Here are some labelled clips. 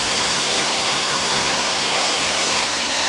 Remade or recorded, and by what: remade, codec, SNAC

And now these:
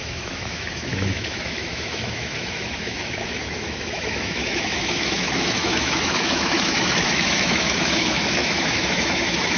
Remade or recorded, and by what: remade, autoencoder, DAC-VAE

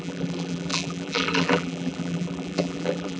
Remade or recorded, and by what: remade, vocoder, BigVGAN v2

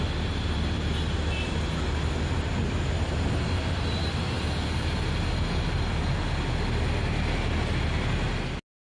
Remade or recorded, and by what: recorded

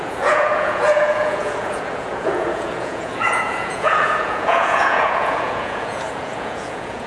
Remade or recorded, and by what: remade, vocoder, Vocos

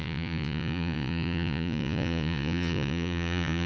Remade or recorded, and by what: remade, vocoder, Vocos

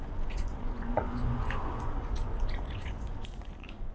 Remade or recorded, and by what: remade, vocoder, Vocos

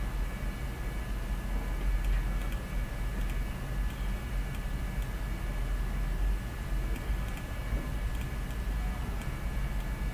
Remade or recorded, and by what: recorded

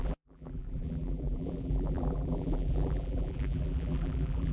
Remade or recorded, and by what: remade, vocoder, BigVGAN v2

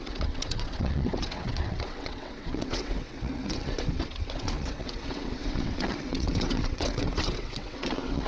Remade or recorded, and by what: remade, vocoder, WaveNeXt